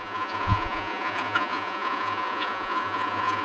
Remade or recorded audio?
remade